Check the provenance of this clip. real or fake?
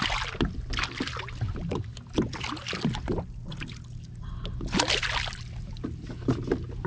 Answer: real